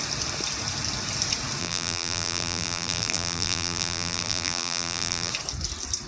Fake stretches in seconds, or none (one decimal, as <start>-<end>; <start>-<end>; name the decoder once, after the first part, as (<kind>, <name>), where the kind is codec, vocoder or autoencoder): 1.6-5.3 (vocoder, BigVGAN v2)